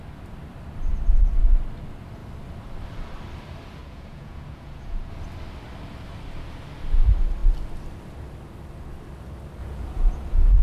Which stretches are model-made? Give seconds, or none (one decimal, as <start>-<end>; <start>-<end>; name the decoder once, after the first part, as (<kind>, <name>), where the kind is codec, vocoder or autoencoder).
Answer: 3.8-5.1 (vocoder, Vocos); 9.6-10.6